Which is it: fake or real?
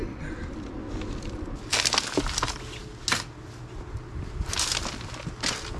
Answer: real